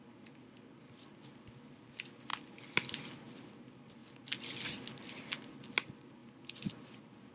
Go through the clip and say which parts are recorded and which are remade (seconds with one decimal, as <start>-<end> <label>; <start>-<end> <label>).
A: 0.0-7.3 recorded